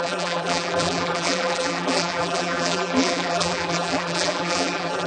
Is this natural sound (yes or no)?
no